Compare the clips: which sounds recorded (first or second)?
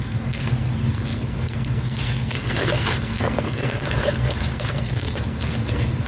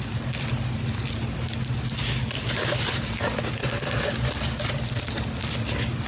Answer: second